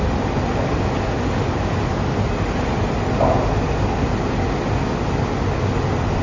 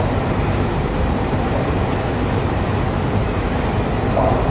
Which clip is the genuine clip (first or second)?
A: first